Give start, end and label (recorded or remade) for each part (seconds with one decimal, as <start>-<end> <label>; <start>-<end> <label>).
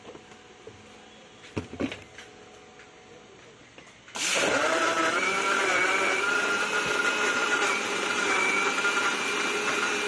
0.0-7.4 recorded; 7.4-8.5 remade; 8.5-10.1 recorded